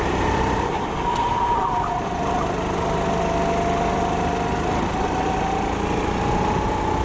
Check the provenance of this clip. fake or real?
real